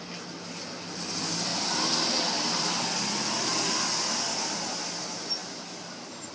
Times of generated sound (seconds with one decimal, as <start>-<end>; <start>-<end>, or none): none